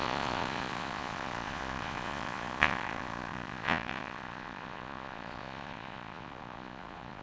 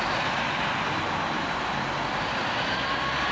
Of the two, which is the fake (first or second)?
first